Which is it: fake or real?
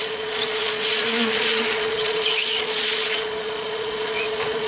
fake